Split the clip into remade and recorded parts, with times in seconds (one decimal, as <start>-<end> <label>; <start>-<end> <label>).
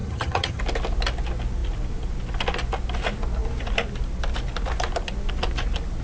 0.0-0.6 remade; 0.6-6.0 recorded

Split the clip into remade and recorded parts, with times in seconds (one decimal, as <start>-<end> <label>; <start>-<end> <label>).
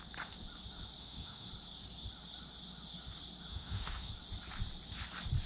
0.0-1.0 recorded; 1.0-1.5 remade; 1.5-3.5 recorded; 3.5-4.1 remade; 4.1-5.5 recorded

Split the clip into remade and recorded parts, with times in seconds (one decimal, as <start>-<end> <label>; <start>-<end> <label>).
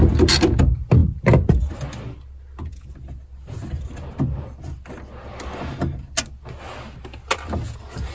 0.0-8.1 recorded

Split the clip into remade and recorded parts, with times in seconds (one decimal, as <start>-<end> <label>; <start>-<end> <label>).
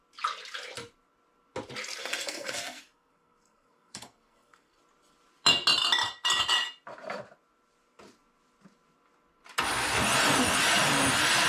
0.0-2.0 recorded; 2.0-4.8 remade; 4.8-11.5 recorded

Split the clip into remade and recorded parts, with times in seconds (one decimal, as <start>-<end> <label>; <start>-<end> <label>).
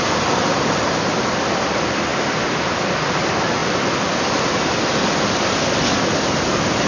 0.0-6.9 recorded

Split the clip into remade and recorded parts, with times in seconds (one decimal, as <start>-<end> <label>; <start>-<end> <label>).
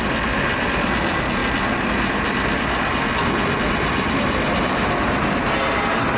0.0-6.2 recorded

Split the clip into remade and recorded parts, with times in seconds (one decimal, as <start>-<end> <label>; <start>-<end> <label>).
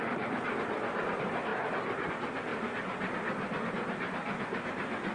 0.0-5.1 recorded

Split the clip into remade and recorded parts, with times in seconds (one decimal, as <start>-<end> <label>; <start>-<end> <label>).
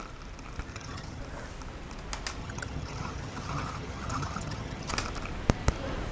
0.0-0.7 recorded; 0.7-1.2 remade; 1.2-2.4 recorded; 2.4-4.9 remade; 4.9-6.1 recorded